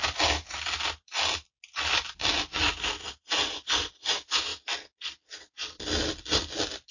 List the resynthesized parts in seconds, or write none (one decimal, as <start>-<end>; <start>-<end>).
none